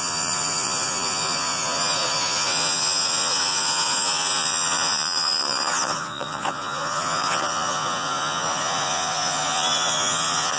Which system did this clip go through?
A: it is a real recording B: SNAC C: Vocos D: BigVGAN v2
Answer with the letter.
C